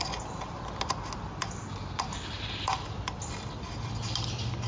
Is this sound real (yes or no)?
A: yes